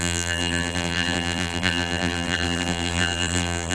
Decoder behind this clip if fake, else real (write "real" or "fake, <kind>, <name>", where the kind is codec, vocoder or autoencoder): fake, vocoder, BigVGAN v2